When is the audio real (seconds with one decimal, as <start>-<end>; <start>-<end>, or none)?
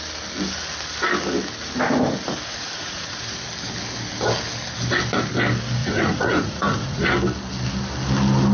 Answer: 0.0-2.5; 3.2-5.8; 7.1-8.5